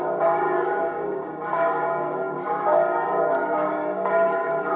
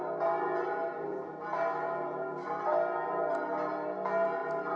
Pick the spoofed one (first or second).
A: first